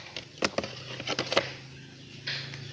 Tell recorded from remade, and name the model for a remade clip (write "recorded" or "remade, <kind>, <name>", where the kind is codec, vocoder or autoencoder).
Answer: recorded